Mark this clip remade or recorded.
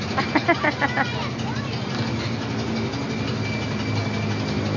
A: recorded